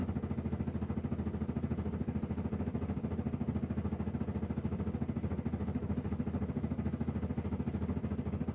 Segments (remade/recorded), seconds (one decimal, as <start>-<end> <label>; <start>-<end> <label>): 0.0-8.5 recorded